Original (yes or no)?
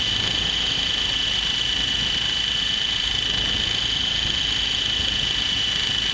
yes